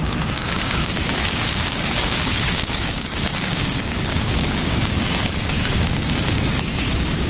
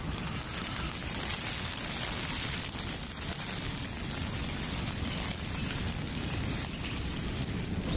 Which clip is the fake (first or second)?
first